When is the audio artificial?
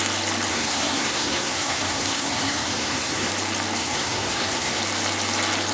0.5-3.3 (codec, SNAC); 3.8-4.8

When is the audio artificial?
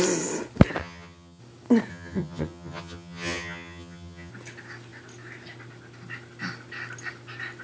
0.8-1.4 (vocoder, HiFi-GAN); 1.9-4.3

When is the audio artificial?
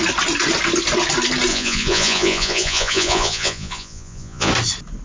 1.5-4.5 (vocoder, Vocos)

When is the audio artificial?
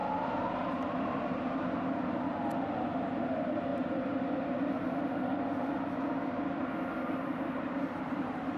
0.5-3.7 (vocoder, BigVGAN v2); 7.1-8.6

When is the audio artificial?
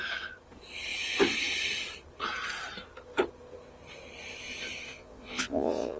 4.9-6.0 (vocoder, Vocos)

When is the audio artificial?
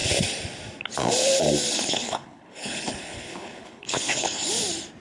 1.7-4.5 (codec, HILCodec)